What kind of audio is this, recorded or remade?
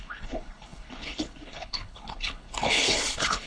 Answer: remade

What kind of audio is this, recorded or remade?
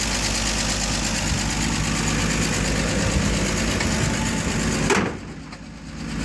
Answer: recorded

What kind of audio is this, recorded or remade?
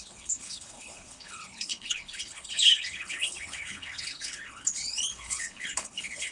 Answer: remade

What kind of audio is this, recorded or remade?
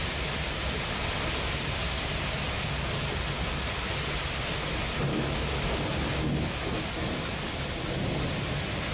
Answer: recorded